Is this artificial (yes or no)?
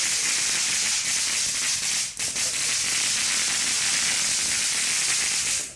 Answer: no